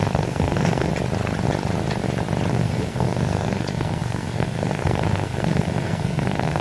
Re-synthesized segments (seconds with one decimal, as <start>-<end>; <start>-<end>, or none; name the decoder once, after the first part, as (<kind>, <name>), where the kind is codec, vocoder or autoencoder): 0.0-0.9 (codec, SNAC); 2.5-6.6